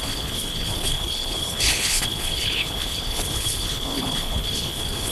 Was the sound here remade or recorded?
remade